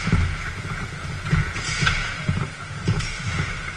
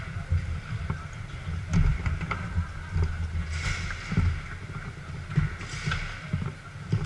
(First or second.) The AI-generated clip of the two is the first